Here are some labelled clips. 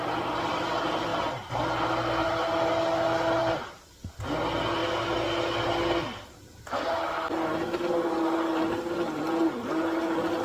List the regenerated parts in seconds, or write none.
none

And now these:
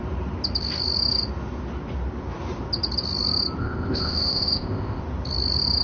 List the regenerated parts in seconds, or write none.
3.6-5.0 (codec, ZipCodec)

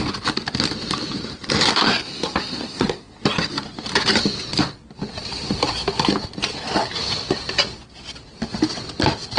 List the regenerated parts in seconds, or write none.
1.7-3.1 (codec, SNAC)

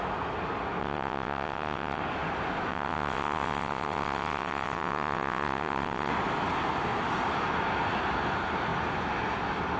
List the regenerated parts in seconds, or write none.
0.8-2.0 (vocoder, WaveNeXt); 2.7-6.1

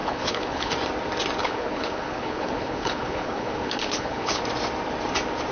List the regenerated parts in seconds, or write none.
0.0-0.7 (codec, HILCodec); 1.4-4.4

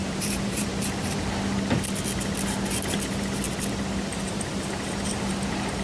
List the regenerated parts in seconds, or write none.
0.0-0.7 (vocoder, BigVGAN v2); 4.1-5.3

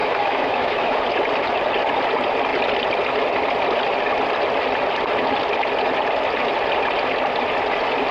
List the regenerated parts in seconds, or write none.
0.0-1.0 (autoencoder, DAC-VAE)